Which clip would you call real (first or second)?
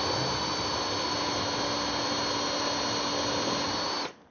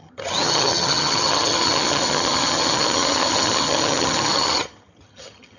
first